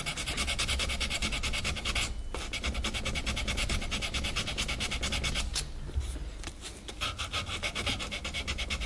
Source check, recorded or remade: recorded